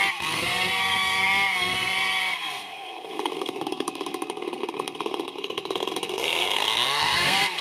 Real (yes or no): no